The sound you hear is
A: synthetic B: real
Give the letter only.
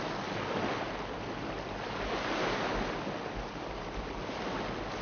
B